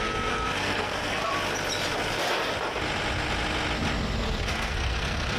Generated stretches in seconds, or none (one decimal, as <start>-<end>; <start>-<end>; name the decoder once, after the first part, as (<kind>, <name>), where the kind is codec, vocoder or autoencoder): 0.0-1.2 (codec, SNAC); 4.4-5.4

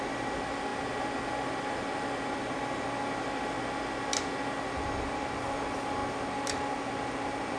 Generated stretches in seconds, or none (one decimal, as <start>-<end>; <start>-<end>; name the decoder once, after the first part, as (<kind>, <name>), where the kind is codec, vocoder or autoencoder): none

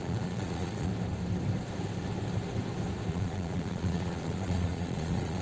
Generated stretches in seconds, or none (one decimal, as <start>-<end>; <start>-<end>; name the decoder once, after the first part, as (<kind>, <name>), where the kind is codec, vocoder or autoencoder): 0.0-0.9 (vocoder, Vocos); 3.1-5.4

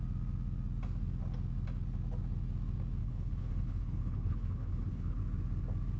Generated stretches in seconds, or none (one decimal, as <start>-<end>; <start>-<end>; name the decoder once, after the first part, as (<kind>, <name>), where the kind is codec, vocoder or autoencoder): 3.0-5.2 (codec, HILCodec)

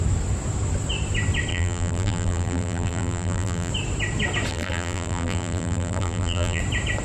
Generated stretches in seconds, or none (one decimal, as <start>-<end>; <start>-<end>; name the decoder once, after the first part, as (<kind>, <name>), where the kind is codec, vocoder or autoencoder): 1.5-3.7 (vocoder, BigVGAN v2); 4.5-6.6

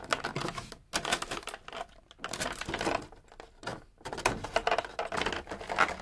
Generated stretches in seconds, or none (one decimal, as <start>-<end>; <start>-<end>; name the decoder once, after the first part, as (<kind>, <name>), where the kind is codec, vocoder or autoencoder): none

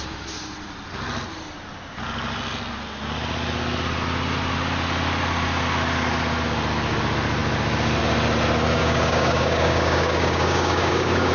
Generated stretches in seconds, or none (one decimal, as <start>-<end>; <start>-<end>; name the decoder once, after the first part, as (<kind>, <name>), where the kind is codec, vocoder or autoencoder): 8.8-11.3 (codec, DAC)